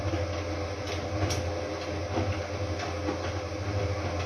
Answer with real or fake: real